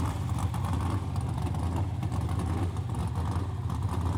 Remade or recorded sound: recorded